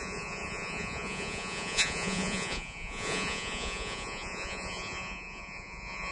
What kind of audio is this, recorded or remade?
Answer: remade